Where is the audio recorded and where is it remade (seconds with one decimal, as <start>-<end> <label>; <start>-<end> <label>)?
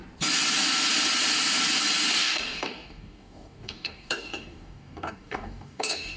0.0-2.2 recorded; 2.2-6.2 remade